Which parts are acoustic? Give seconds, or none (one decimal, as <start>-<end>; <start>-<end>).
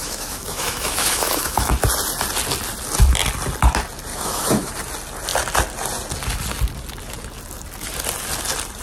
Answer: 1.7-4.1; 4.7-8.8